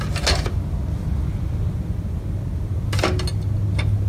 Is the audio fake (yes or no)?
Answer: no